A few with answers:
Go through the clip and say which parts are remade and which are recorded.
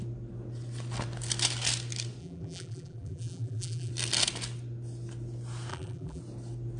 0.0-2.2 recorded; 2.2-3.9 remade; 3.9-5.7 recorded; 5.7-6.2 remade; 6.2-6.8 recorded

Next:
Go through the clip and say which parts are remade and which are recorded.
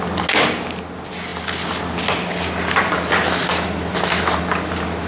0.0-5.1 recorded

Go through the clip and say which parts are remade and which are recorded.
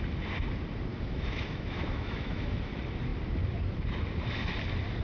0.0-0.9 recorded; 0.9-2.7 remade; 2.7-5.0 recorded